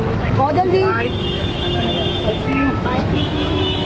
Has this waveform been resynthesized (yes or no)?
yes